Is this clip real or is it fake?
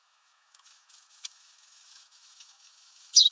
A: fake